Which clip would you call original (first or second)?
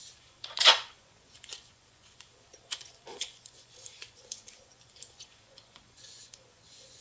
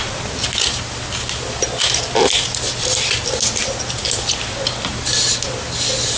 second